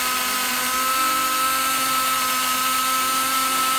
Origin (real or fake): real